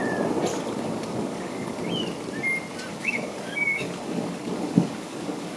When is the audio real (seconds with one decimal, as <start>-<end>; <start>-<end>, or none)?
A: 0.0-0.5; 1.8-2.9